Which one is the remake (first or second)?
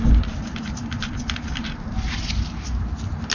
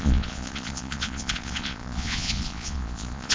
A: second